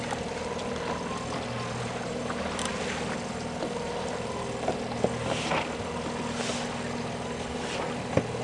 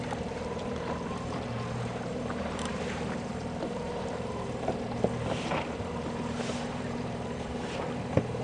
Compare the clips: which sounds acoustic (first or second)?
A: first